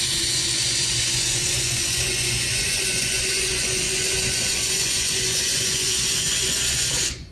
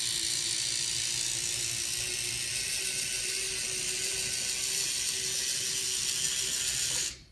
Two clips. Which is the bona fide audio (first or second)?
second